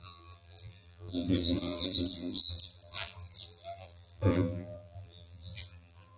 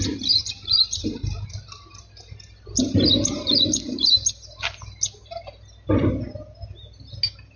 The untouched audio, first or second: second